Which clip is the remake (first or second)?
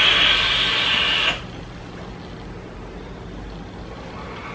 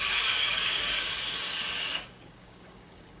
second